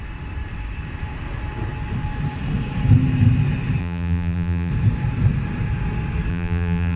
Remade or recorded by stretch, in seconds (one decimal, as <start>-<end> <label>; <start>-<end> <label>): 0.0-3.8 recorded; 3.8-4.7 remade; 4.7-6.3 recorded; 6.3-7.0 remade